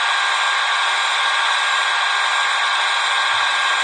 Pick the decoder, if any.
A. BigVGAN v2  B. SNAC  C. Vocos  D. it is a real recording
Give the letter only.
A